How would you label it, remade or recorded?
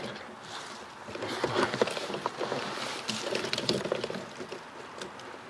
recorded